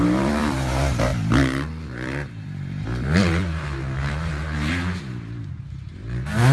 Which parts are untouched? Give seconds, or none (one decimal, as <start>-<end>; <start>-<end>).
none